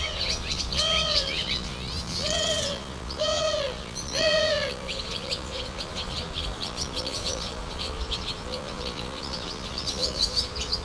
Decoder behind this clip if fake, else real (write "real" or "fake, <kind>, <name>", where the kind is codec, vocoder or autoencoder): fake, vocoder, Vocos